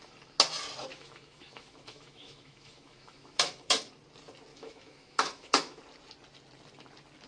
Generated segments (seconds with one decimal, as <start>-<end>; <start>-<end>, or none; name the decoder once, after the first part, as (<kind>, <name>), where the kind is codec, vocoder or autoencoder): 0.9-3.9 (autoencoder, DAC-VAE); 4.5-5.8